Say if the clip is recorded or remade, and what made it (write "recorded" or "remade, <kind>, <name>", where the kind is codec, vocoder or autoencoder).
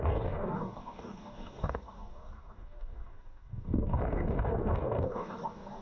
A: remade, codec, DAC